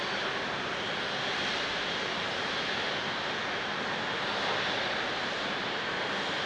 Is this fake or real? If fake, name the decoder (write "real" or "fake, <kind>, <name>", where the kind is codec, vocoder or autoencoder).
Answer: real